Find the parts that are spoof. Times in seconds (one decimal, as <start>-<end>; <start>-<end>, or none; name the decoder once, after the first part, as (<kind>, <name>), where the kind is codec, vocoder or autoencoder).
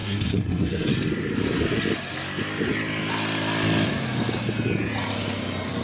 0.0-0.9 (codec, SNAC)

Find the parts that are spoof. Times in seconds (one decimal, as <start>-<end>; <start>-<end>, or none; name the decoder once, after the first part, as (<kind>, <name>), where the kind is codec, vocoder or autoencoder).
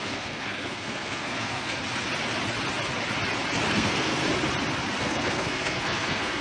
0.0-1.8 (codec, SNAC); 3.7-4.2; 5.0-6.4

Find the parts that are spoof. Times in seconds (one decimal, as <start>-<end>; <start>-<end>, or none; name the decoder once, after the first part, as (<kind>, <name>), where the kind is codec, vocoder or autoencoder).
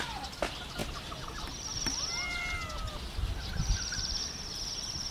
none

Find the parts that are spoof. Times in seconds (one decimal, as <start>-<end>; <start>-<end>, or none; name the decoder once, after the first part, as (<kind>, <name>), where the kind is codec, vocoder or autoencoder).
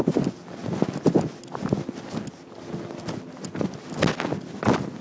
none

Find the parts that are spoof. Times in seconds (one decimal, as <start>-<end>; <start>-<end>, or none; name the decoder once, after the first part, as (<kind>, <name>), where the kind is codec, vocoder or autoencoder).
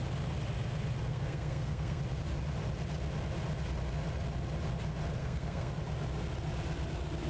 1.1-2.0 (codec, SNAC); 5.2-5.7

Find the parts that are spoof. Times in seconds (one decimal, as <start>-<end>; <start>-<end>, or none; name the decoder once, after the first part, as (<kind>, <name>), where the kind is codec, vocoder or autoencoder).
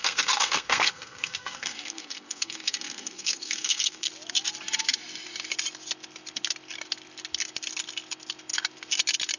0.0-4.1 (codec, SNAC)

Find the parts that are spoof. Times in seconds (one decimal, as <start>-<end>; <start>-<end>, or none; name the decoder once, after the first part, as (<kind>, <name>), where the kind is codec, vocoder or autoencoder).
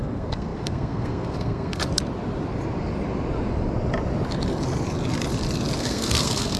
0.0-1.8 (codec, SNAC); 5.8-6.6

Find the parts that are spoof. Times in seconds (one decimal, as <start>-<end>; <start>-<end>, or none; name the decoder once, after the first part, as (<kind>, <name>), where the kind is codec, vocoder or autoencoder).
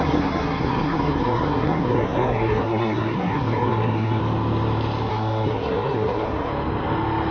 0.0-4.2 (codec, SNAC); 5.1-6.5